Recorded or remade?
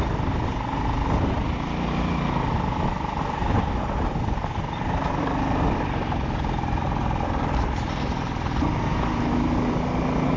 recorded